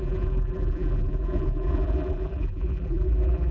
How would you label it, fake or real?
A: fake